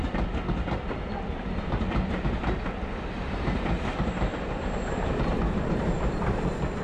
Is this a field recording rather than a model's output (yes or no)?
yes